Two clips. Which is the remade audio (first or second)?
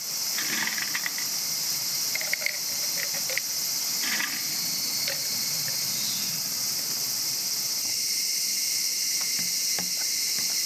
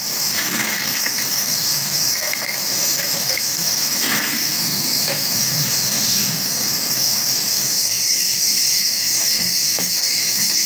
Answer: second